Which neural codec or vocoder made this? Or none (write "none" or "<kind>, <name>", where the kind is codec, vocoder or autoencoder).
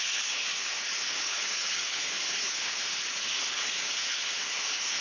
codec, HILCodec